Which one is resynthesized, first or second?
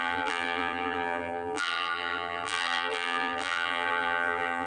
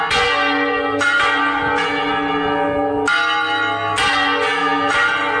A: first